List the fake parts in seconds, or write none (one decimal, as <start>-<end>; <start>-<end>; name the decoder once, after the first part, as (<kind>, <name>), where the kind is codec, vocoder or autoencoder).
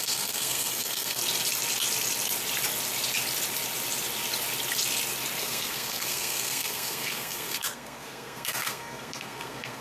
0.0-1.2 (codec, SNAC); 5.4-9.8